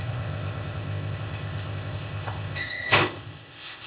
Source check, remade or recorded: remade